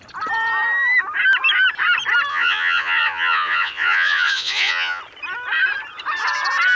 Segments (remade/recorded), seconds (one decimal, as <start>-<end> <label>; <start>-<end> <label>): 0.0-2.3 recorded; 2.3-5.0 remade; 5.0-6.8 recorded